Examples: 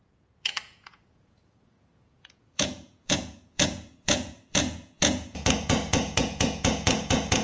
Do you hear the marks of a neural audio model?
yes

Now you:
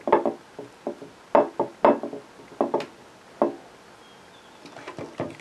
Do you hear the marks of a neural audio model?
no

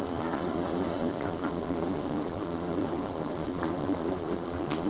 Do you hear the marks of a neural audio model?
yes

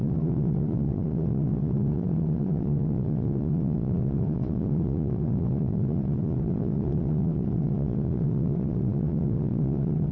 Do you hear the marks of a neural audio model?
yes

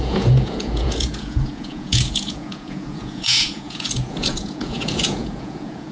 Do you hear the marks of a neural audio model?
yes